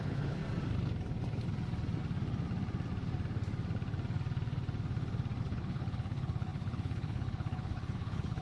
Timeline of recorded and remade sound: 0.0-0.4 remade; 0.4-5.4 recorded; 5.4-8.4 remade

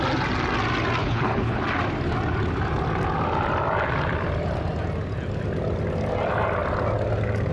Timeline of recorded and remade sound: 0.0-1.0 recorded; 1.0-1.6 remade; 1.6-7.5 recorded

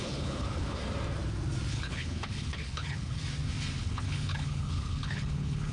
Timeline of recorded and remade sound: 0.0-0.8 remade; 0.8-1.7 recorded; 1.7-3.2 remade; 3.2-3.8 recorded; 3.8-5.7 remade

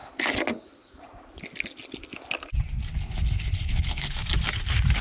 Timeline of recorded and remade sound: 0.0-2.9 recorded; 2.9-4.1 remade; 4.1-5.0 recorded